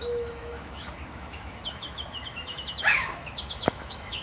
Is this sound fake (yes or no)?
yes